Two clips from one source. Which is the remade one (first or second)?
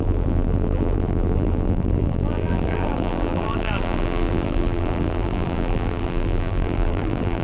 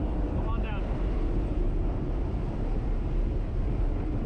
first